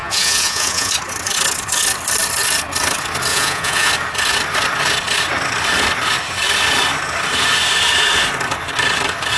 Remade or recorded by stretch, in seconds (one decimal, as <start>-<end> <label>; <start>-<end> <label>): 0.0-0.9 remade; 0.9-3.3 recorded; 3.3-3.9 remade; 3.9-9.4 recorded